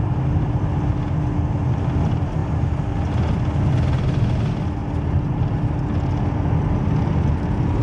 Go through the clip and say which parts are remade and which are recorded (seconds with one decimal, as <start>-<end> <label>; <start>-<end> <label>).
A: 0.0-2.4 recorded; 2.4-2.9 remade; 2.9-7.8 recorded